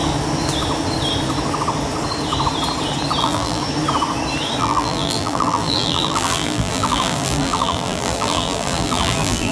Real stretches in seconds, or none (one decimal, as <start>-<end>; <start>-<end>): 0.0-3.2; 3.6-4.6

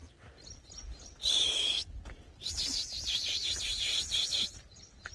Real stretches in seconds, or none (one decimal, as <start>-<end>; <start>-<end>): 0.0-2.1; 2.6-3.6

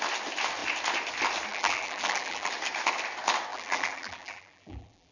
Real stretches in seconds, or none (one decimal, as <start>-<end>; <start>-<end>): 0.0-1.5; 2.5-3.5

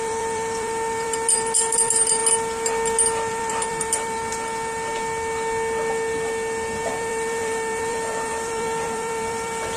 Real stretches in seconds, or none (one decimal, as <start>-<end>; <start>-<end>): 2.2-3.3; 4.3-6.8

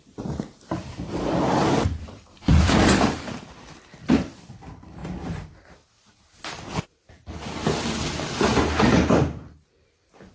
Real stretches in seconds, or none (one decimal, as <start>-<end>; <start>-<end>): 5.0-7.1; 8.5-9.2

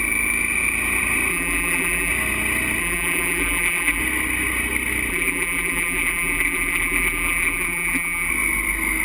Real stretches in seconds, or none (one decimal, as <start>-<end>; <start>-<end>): 0.0-1.3; 2.1-2.8; 4.0-5.1; 8.3-9.0

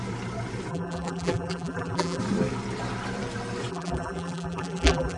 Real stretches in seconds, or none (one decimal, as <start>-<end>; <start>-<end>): 0.0-0.7; 2.2-3.7